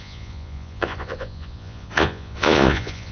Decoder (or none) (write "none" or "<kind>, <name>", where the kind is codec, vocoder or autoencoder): vocoder, Vocos